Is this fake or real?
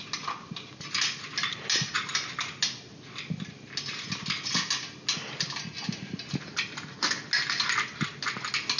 real